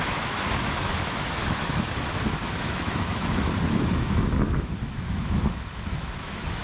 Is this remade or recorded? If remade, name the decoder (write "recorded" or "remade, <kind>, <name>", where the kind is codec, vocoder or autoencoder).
remade, autoencoder, DAC-VAE